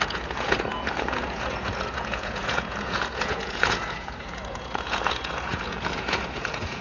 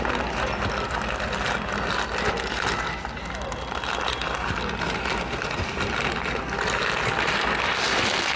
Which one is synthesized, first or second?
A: first